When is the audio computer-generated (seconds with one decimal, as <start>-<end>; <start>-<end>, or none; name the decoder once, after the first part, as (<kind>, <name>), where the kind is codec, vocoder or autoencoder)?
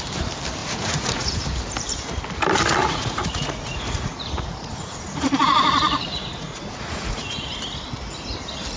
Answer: 0.6-1.3 (vocoder, Vocos); 2.8-7.5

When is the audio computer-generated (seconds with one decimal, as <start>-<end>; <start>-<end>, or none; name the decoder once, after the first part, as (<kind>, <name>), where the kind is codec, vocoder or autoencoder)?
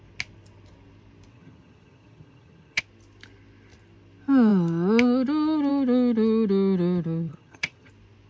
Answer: 1.3-2.8 (vocoder, HiFi-GAN); 7.3-7.9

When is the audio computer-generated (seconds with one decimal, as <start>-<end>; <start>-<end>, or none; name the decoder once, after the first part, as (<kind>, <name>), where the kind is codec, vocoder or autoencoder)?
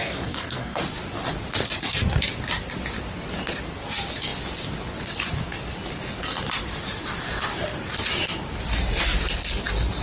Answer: 0.0-0.8 (codec, SNAC)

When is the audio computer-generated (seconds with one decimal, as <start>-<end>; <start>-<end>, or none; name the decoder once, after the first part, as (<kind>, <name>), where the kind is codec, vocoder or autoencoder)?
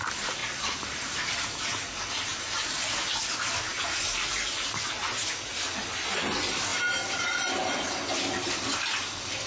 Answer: 0.4-1.3 (vocoder, BigVGAN v2); 2.3-3.0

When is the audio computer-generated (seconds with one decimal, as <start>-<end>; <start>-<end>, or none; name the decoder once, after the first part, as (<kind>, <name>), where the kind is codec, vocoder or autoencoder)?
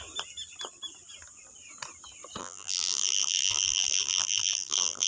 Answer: 2.4-5.1 (vocoder, BigVGAN v2)